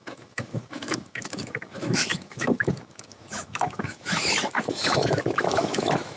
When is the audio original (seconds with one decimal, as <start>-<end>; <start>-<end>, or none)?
none